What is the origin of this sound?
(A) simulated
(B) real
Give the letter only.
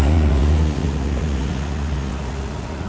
A